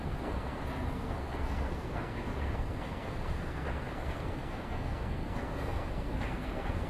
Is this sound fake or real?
fake